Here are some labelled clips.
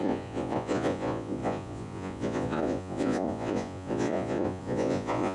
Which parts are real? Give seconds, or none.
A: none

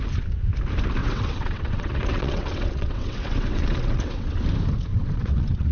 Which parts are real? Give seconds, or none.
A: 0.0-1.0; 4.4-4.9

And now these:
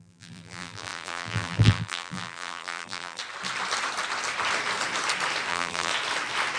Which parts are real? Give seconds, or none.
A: 3.2-5.5; 5.9-6.6

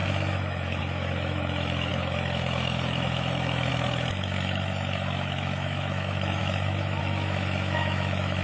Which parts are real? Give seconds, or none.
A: none